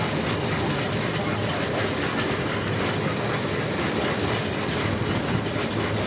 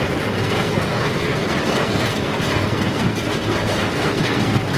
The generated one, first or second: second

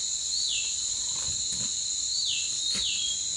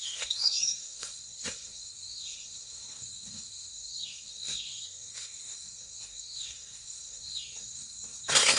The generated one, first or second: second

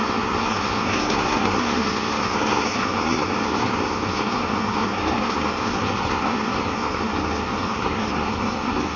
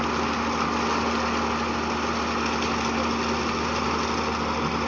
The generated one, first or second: first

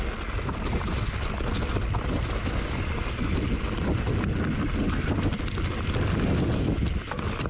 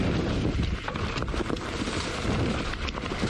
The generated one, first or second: second